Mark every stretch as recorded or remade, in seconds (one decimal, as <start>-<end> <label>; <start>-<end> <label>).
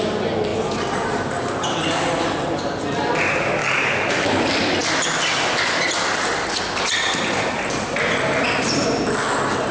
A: 0.0-3.6 recorded; 3.6-4.1 remade; 4.1-9.7 recorded